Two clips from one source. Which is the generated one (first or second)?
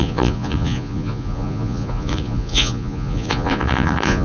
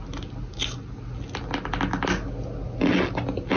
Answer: first